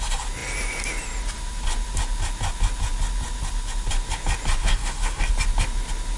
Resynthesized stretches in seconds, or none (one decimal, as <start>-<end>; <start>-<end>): 4.6-5.3